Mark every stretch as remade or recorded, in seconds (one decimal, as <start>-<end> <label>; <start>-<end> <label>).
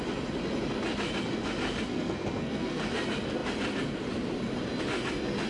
0.0-1.9 recorded; 1.9-2.8 remade; 2.8-5.5 recorded